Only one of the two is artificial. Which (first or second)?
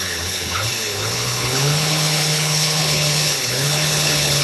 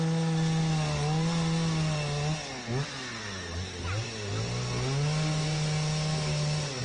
first